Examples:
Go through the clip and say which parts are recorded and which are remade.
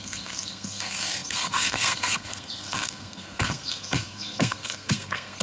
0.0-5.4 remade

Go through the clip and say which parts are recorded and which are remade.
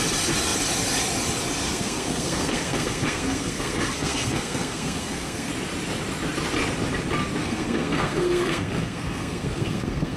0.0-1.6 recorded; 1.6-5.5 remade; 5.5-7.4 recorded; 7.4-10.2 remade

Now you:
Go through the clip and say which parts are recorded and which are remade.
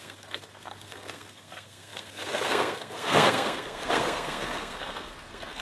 0.0-5.6 remade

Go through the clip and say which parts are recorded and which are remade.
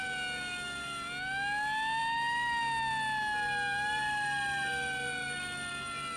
0.0-6.2 recorded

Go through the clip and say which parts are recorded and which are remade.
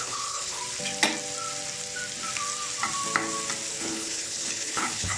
0.0-0.6 remade; 0.6-3.7 recorded; 3.7-5.2 remade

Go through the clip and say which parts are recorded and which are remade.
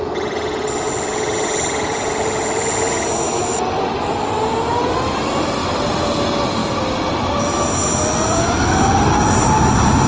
0.0-5.6 recorded; 5.6-6.1 remade; 6.1-10.1 recorded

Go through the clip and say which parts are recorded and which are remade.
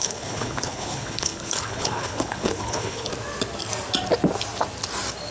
0.0-3.1 remade; 3.1-5.3 recorded